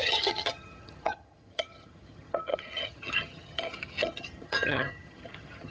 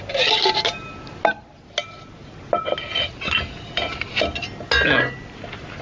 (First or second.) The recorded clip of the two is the second